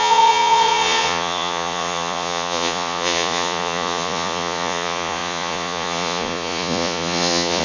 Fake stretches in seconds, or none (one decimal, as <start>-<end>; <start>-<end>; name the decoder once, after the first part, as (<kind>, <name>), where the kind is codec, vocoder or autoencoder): 0.0-7.6 (vocoder, Vocos)